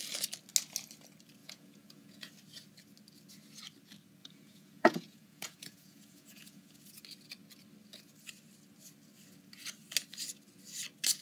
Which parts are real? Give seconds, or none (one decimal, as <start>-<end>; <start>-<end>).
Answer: 0.0-1.4; 2.3-4.2; 6.8-11.2